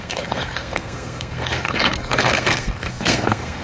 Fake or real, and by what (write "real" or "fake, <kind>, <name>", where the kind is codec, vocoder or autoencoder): fake, codec, SNAC